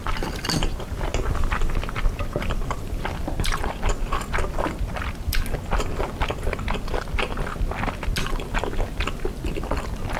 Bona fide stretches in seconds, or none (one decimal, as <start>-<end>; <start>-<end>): 1.1-1.7; 3.6-8.3